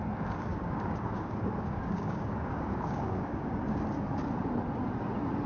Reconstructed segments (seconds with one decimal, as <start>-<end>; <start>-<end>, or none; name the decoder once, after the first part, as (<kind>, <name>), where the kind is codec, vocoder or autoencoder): 0.5-3.8 (codec, DAC)